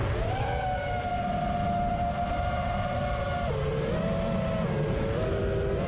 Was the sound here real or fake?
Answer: real